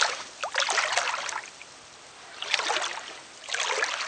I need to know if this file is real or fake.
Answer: real